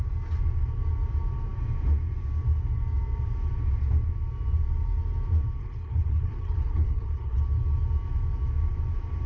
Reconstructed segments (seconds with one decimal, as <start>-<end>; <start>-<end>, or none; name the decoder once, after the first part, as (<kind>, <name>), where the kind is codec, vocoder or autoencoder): 5.6-7.4 (codec, HILCodec)